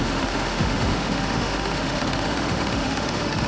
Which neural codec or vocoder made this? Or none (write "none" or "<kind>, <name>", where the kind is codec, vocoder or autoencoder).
autoencoder, DAC-VAE